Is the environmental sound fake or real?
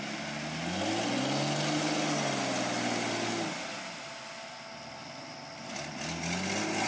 real